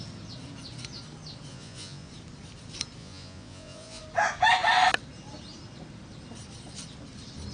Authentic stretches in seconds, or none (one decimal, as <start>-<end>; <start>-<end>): 0.0-1.5; 2.1-3.0; 4.0-7.5